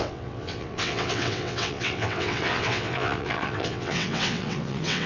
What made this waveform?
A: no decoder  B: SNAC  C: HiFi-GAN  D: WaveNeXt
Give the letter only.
D